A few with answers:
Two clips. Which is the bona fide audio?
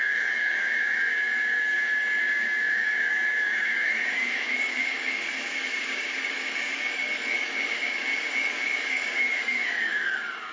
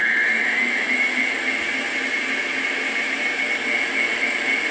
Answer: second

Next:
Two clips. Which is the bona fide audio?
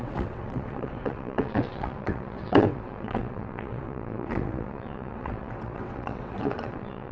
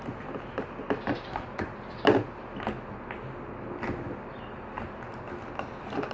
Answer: second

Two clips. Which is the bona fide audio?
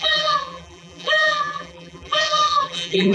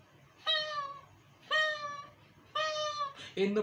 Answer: second